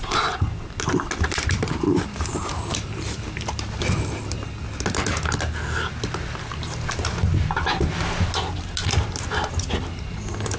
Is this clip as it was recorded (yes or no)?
yes